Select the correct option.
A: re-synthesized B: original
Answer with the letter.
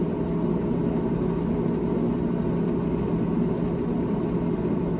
B